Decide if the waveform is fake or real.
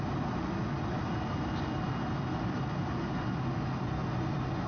real